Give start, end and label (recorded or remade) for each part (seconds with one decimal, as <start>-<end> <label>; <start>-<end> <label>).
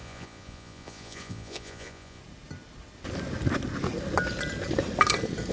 0.0-2.2 remade; 2.2-5.5 recorded